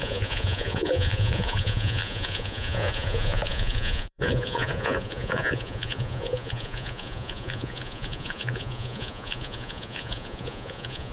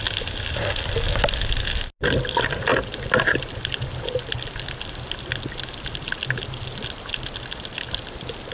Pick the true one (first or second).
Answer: second